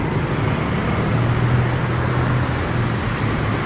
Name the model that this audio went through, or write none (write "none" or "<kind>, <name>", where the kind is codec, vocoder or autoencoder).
none